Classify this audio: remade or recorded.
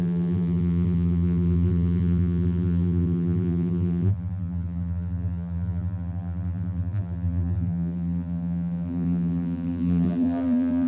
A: remade